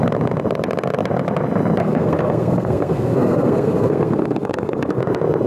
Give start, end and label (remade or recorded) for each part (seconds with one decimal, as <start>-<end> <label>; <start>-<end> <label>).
0.0-1.8 recorded; 1.8-5.0 remade; 5.0-5.5 recorded